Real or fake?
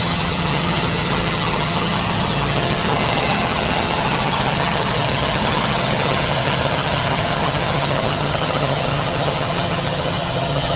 fake